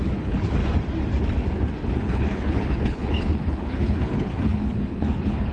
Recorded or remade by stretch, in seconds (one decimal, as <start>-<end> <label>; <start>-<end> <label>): 0.0-0.6 remade; 0.6-2.0 recorded; 2.0-5.5 remade